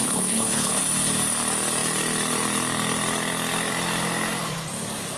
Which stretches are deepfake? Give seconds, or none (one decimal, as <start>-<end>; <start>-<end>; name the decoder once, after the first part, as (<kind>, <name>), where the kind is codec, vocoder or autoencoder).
0.0-0.8 (codec, HILCodec)